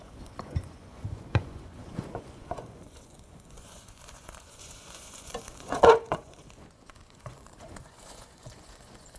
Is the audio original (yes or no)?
no